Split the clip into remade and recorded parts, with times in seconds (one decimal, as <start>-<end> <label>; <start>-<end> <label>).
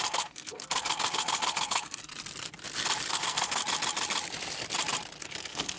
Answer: 0.0-2.1 remade; 2.1-3.1 recorded; 3.1-3.6 remade; 3.6-5.2 recorded; 5.2-5.8 remade